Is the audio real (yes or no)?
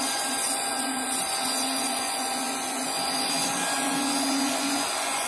no